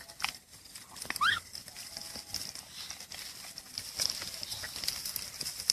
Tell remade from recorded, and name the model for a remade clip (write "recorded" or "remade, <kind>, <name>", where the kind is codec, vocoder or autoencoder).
recorded